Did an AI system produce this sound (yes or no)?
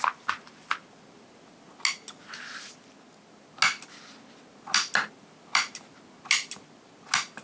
no